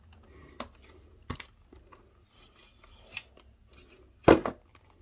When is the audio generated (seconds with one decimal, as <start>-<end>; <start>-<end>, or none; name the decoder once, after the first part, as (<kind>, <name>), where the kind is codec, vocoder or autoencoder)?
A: none